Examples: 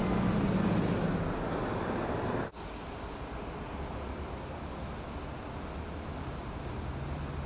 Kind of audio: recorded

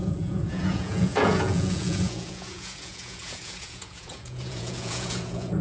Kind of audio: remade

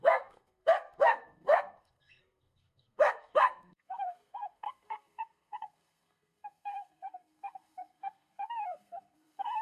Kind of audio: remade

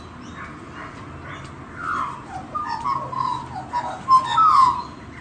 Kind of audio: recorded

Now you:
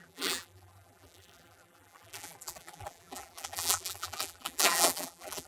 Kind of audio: remade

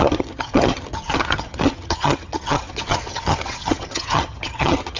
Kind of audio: remade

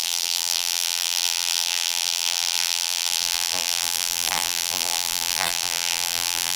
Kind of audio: remade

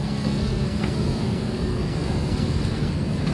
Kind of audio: remade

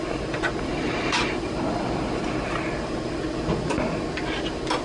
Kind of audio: recorded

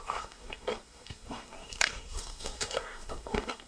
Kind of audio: remade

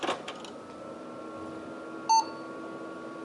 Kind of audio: recorded